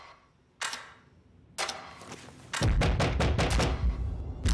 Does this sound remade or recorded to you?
recorded